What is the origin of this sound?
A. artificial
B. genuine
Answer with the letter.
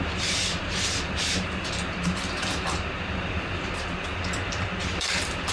A